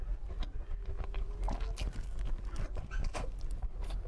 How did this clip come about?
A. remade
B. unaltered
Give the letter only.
B